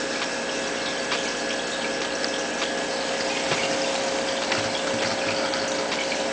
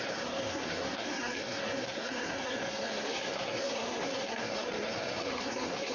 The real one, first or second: first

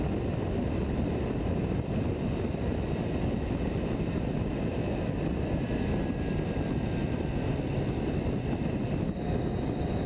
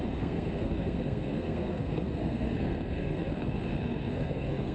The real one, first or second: first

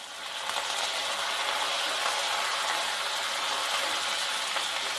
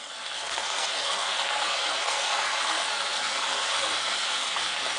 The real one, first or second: first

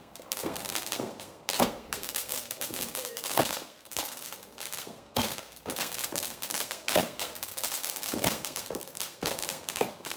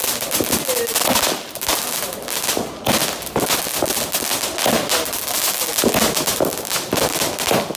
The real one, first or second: second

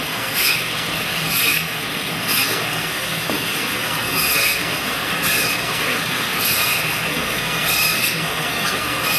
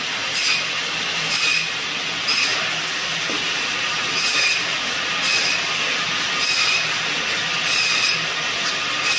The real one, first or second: second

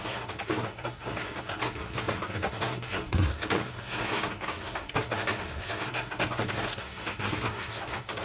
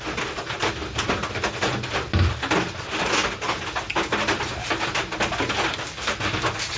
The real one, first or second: second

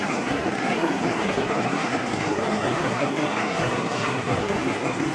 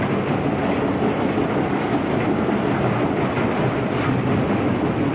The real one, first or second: second